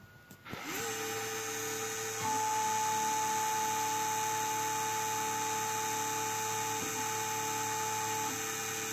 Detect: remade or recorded recorded